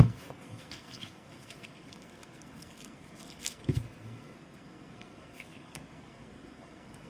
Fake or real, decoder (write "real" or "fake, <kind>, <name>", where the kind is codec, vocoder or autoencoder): fake, codec, SNAC